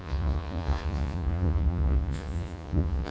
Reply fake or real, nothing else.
fake